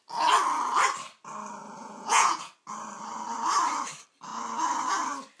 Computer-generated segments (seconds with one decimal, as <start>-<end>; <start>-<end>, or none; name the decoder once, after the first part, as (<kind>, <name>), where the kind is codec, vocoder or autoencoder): 1.8-2.5 (vocoder, Vocos)